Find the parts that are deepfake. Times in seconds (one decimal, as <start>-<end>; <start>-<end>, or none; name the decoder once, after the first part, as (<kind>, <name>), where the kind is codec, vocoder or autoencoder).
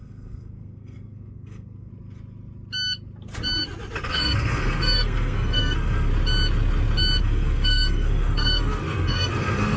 0.0-1.9 (codec, SNAC); 4.1-6.1; 7.2-9.8